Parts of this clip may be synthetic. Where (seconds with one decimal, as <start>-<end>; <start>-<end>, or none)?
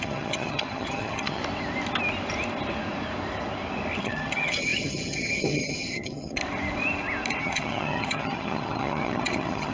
0.0-1.4; 4.0-6.4; 7.4-9.7